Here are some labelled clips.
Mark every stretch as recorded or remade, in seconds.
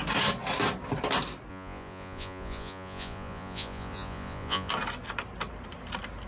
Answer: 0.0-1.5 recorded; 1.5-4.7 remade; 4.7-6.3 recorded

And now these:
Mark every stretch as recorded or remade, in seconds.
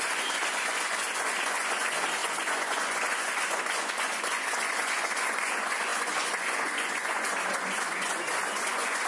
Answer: 0.0-9.1 remade